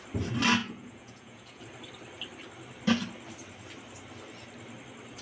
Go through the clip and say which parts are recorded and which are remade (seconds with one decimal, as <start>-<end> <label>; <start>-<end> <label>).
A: 0.0-0.6 recorded; 0.6-1.6 remade; 1.6-5.2 recorded